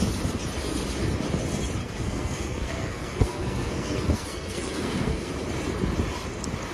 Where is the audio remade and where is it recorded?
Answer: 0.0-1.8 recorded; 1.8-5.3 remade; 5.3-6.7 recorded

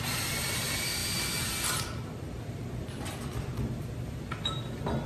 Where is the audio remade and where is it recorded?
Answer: 0.0-5.1 remade

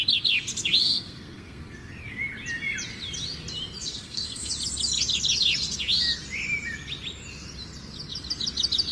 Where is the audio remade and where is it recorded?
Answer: 0.0-0.8 recorded; 0.8-1.9 remade; 1.9-3.8 recorded; 3.8-4.5 remade; 4.5-8.9 recorded

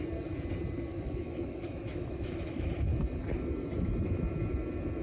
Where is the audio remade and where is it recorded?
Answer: 0.0-0.9 recorded; 0.9-2.7 remade; 2.7-5.0 recorded